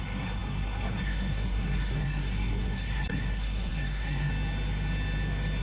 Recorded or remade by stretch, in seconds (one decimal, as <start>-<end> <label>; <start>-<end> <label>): 0.0-4.3 remade; 4.3-5.6 recorded